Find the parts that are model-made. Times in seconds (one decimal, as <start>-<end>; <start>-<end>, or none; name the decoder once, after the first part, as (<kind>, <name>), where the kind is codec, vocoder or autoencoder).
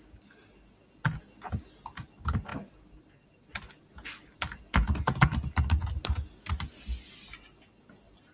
none